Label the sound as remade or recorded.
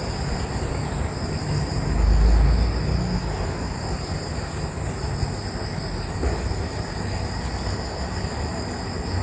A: recorded